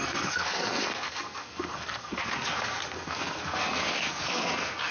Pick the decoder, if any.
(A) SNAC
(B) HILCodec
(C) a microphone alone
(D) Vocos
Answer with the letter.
A